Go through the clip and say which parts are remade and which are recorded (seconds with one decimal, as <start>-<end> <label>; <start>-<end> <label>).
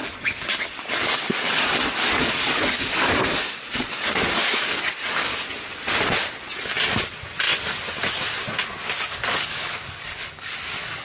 0.0-5.3 remade; 5.3-8.9 recorded; 8.9-11.0 remade